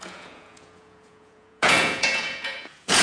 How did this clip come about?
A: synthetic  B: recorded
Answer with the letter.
A